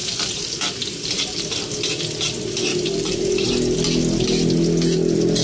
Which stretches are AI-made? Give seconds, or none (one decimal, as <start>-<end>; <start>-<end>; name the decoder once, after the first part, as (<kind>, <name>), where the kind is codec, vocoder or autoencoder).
0.0-0.5 (vocoder, BigVGAN v2); 2.7-3.5